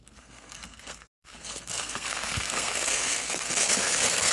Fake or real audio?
fake